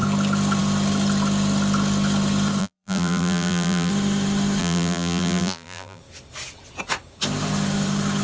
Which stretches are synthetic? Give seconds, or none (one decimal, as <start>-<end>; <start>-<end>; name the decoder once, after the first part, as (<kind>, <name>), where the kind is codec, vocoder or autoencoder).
2.6-3.9 (vocoder, BigVGAN v2); 4.6-6.0